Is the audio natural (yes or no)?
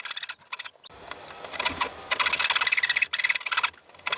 yes